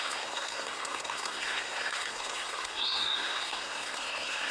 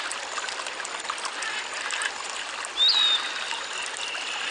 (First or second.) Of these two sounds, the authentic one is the second